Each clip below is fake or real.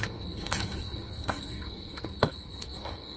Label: fake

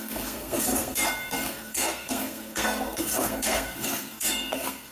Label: fake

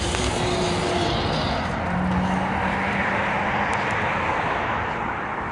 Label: real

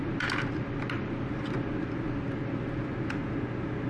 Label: real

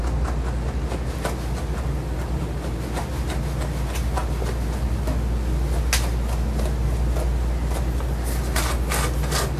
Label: real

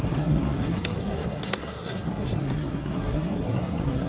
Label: fake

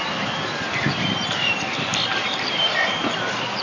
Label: real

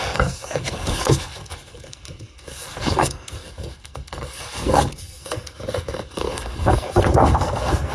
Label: fake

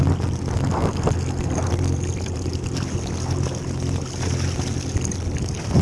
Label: real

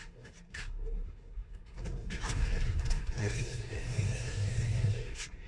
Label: fake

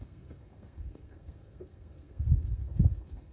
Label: fake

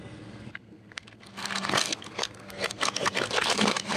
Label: fake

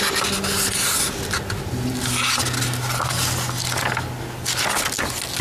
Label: real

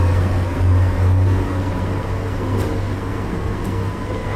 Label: fake